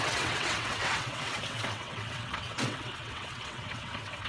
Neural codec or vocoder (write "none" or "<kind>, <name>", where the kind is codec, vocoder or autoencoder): vocoder, WaveNeXt